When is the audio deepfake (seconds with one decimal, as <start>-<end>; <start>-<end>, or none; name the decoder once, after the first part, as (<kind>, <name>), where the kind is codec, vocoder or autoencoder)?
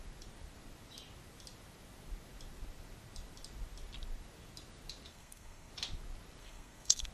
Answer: 5.1-5.7 (codec, SNAC); 6.4-7.1